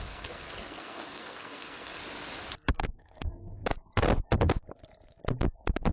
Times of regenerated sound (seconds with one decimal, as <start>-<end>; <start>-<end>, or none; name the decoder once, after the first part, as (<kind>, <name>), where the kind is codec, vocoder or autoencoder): 0.0-2.0 (codec, SNAC); 2.8-3.6